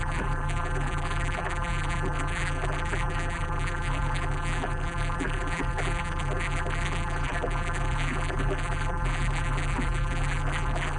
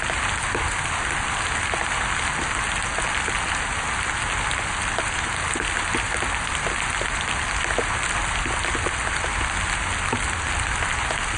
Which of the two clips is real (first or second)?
second